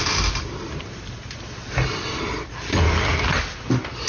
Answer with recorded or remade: recorded